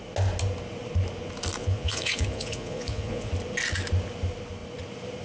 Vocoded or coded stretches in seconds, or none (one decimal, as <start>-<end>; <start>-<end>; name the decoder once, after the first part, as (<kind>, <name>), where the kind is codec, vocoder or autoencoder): 1.6-3.3 (vocoder, Vocos)